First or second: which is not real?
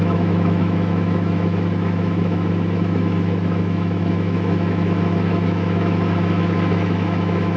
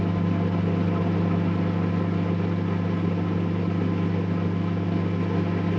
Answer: first